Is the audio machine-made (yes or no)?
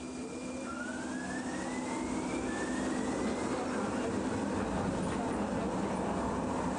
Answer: no